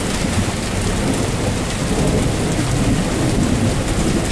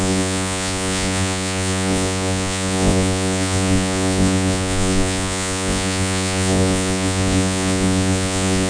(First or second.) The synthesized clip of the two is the second